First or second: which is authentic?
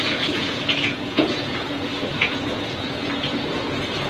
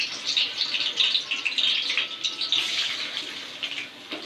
second